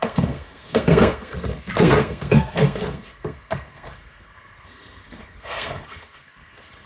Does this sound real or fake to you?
fake